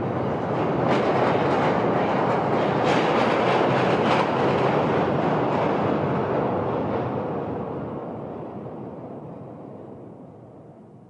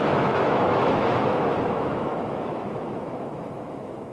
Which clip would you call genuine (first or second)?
first